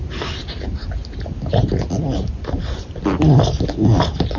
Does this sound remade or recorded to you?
recorded